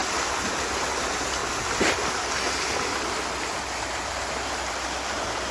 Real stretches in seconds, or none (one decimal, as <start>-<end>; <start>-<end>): 0.0-5.5